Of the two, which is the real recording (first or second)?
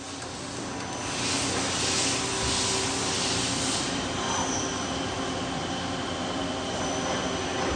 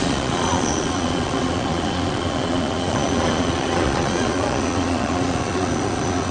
first